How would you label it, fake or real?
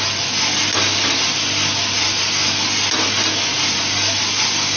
real